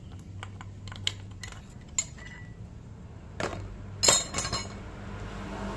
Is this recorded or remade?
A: recorded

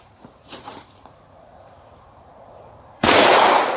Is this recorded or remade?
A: remade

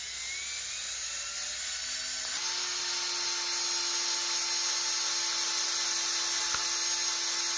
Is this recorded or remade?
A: recorded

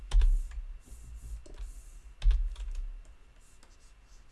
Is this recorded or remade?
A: recorded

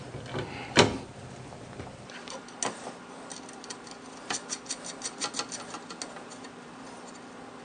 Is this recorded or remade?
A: recorded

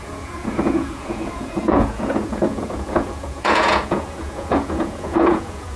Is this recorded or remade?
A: remade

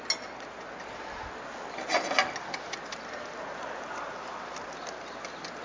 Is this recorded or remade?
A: recorded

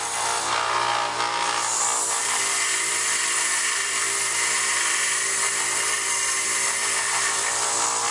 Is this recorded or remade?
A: recorded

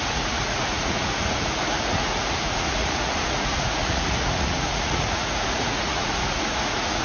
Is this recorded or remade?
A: remade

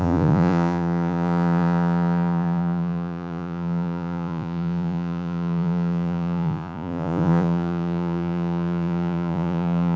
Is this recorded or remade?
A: remade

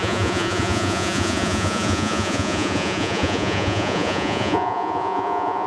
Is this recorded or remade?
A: remade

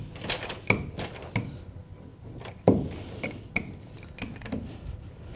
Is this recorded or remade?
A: recorded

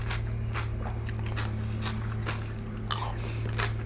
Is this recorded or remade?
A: recorded